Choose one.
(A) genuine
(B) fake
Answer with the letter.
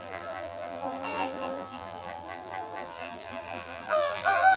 B